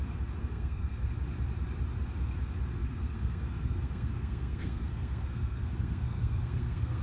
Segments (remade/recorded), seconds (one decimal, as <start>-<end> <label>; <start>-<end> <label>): 0.0-0.4 recorded; 0.4-1.1 remade; 1.1-2.8 recorded; 2.8-7.0 remade